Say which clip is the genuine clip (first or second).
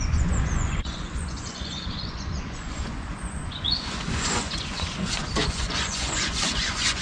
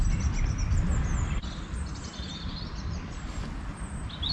second